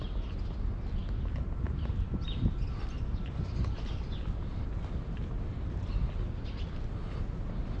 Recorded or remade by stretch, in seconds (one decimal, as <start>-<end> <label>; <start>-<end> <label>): 0.0-7.8 recorded